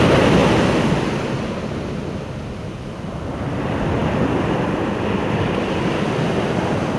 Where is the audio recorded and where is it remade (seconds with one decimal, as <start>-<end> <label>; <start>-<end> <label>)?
0.0-7.0 recorded